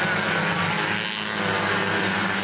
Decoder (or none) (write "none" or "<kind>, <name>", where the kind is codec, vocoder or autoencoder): none